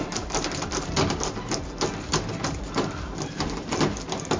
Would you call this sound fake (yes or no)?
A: no